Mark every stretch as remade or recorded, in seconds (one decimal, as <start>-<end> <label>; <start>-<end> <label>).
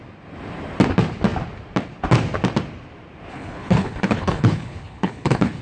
0.0-3.3 recorded; 3.3-5.6 remade